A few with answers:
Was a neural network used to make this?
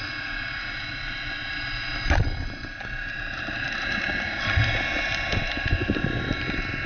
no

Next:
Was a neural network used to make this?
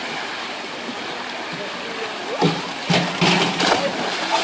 no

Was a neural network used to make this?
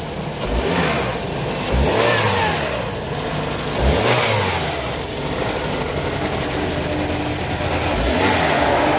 no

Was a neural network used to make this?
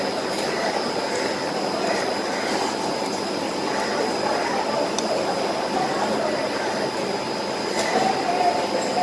no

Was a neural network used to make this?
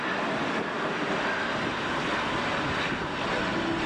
no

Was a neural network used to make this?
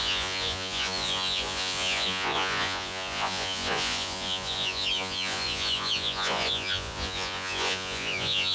yes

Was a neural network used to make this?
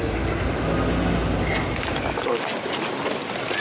no